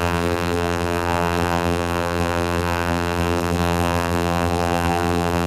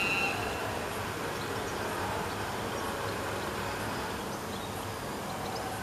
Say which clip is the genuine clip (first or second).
second